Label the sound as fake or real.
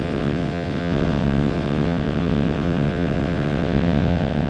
fake